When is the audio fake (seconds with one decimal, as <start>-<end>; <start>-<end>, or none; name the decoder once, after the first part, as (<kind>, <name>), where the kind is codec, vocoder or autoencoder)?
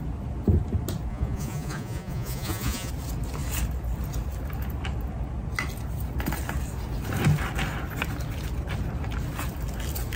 1.1-2.9 (vocoder, Vocos)